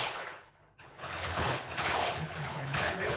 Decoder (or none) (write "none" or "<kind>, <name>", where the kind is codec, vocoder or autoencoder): codec, HILCodec